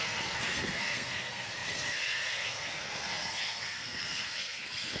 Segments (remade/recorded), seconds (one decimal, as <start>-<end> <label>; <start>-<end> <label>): 0.0-5.0 remade